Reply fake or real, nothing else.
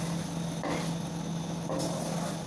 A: real